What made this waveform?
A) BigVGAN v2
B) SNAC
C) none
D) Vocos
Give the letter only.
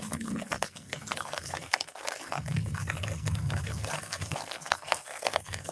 B